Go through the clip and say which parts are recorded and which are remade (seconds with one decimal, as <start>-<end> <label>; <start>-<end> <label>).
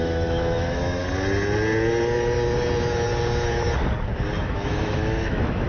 0.0-1.0 remade; 1.0-4.4 recorded; 4.4-5.7 remade